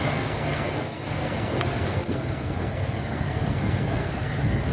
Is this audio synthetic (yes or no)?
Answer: yes